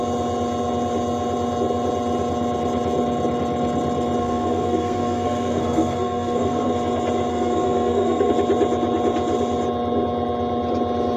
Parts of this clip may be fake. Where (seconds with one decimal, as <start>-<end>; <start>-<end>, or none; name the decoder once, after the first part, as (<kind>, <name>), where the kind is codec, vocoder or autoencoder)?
4.2-6.7 (codec, SNAC); 7.3-8.3